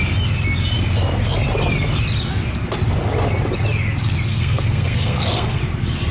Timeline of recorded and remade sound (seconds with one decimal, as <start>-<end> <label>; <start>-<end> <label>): 0.0-4.3 recorded; 4.3-5.6 remade; 5.6-6.1 recorded